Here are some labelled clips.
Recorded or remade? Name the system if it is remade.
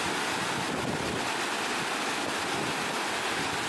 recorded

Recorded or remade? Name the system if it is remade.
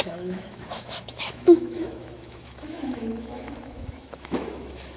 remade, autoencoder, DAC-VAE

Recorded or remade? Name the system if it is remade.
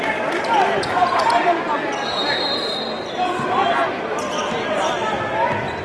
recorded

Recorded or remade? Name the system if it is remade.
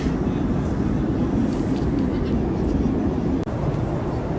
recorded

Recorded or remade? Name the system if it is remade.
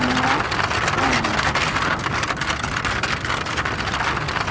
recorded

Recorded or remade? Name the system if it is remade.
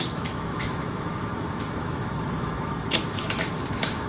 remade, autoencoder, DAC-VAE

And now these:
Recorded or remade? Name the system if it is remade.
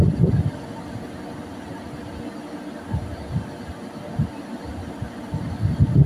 recorded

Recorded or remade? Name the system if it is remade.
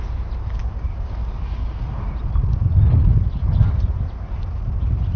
recorded